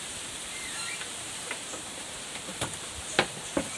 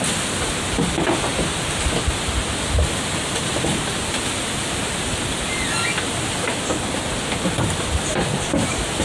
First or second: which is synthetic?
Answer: first